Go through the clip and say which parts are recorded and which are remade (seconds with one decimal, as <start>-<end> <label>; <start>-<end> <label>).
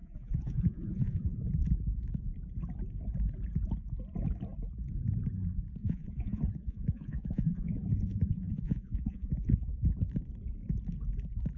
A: 0.0-1.4 remade; 1.4-5.8 recorded; 5.8-9.7 remade; 9.7-11.6 recorded